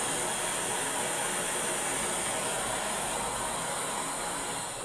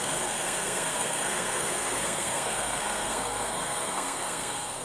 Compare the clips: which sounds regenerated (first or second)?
second